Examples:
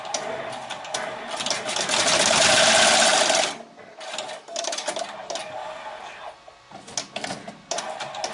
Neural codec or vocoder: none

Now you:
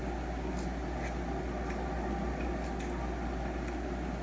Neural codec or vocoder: none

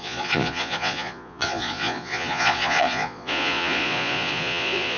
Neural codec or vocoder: vocoder, Vocos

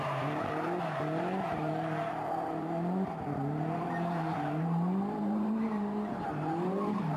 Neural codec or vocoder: vocoder, BigVGAN v2